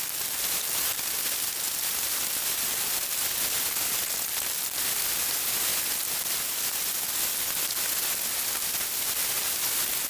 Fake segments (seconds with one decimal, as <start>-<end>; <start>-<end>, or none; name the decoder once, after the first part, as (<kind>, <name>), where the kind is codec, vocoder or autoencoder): none